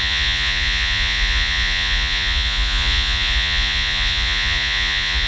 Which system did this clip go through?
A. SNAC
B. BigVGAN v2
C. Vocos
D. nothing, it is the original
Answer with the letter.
C